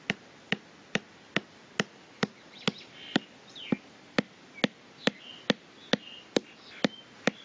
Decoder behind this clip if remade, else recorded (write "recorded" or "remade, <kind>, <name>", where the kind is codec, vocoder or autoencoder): recorded